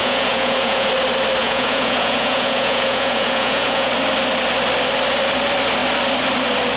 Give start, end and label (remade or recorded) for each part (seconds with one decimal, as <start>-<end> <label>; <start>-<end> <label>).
0.0-0.9 remade; 0.9-1.4 recorded; 1.4-3.9 remade; 3.9-6.8 recorded